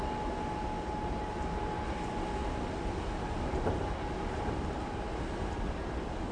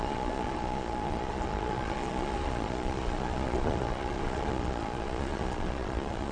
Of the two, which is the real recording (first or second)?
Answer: first